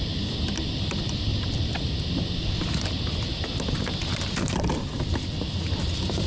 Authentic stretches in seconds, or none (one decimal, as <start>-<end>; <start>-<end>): 0.0-1.3; 1.9-2.4; 2.9-6.3